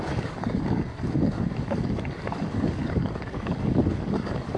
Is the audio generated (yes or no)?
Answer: yes